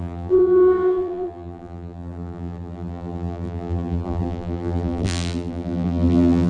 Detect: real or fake fake